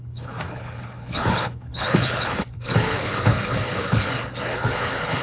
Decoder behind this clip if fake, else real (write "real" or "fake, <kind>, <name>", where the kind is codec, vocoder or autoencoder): fake, codec, HILCodec